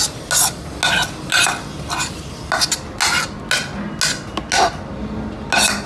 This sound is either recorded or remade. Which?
recorded